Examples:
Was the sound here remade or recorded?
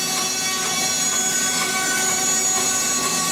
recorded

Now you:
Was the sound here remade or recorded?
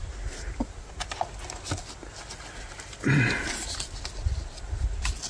recorded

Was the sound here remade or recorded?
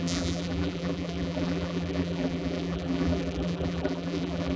remade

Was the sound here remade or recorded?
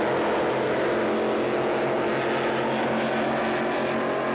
recorded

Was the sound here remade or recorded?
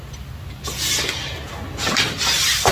recorded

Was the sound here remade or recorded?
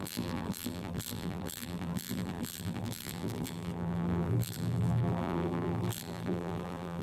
remade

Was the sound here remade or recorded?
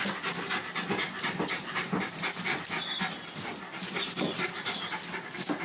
remade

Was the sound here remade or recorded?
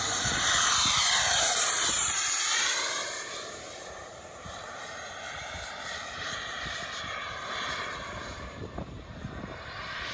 remade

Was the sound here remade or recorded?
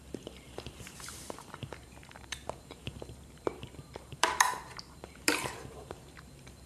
remade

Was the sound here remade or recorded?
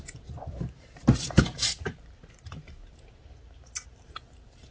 remade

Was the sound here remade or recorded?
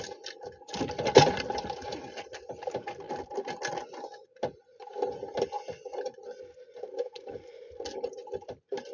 recorded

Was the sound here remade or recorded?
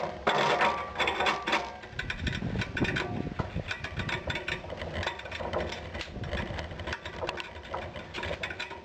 remade